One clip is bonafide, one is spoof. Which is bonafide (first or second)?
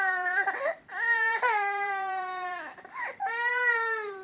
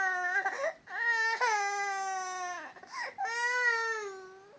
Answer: second